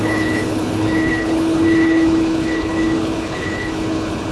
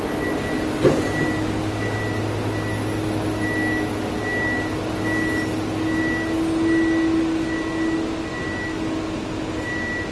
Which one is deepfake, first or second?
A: first